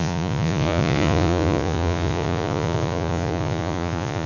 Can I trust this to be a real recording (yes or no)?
no